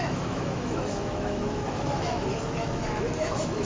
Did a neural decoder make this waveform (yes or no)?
yes